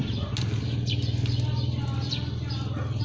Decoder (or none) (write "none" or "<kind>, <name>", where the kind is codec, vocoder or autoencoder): none